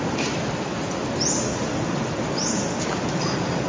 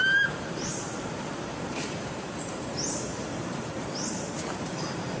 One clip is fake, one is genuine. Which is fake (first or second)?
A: second